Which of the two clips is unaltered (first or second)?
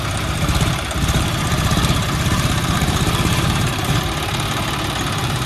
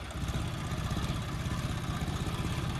second